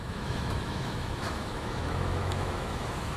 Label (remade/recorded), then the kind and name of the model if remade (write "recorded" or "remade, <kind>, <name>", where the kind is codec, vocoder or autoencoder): remade, autoencoder, DAC-VAE